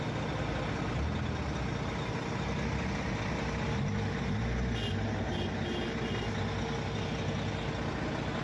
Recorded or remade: recorded